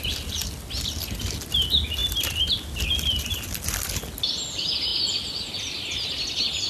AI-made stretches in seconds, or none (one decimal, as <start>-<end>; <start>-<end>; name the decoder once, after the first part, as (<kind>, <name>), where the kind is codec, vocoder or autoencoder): none